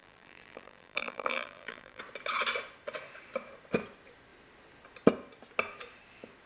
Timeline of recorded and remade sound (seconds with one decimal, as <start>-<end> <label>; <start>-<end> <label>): 0.0-2.0 remade; 2.0-6.5 recorded

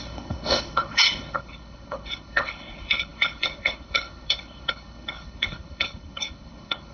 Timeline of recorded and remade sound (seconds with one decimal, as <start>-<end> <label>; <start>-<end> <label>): 0.0-6.9 remade

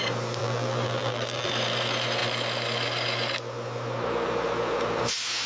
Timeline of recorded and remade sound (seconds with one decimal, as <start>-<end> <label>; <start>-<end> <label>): 0.0-0.4 recorded; 0.4-1.5 remade; 1.5-5.5 recorded

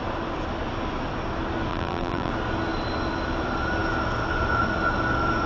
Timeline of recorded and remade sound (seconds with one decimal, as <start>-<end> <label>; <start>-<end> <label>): 0.0-1.7 recorded; 1.7-2.3 remade; 2.3-5.5 recorded

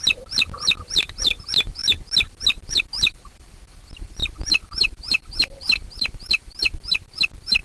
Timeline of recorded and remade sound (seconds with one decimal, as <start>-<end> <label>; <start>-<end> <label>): 0.0-4.2 recorded; 4.2-7.6 remade

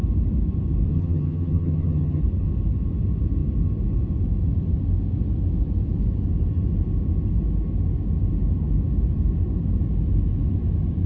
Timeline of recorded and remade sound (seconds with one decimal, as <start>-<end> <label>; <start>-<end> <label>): 0.0-0.9 recorded; 0.9-2.2 remade; 2.2-11.1 recorded

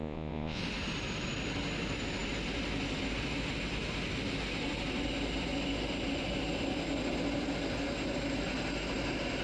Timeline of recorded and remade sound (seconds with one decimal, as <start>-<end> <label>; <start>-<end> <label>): 0.0-0.6 remade; 0.6-9.4 recorded

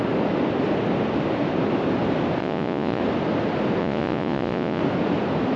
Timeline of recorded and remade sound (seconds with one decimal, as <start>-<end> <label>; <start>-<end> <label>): 0.0-2.4 recorded; 2.4-3.0 remade; 3.0-3.8 recorded; 3.8-4.8 remade; 4.8-5.6 recorded